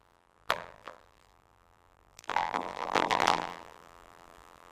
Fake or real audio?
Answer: fake